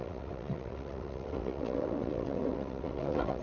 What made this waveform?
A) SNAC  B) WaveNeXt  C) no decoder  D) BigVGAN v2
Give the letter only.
B